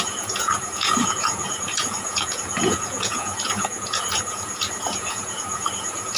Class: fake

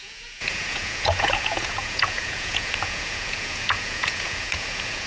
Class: fake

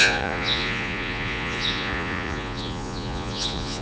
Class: fake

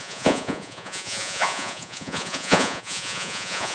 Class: fake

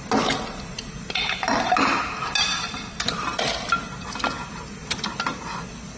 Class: real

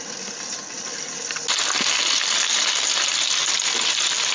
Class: real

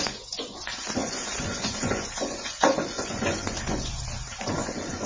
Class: fake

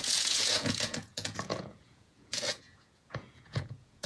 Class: fake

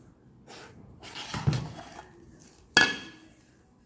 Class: real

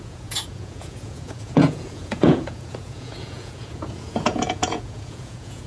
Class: fake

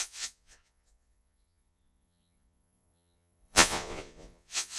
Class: fake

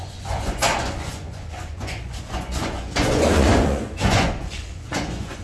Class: fake